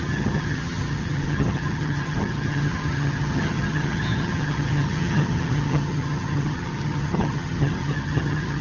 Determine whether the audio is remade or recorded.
remade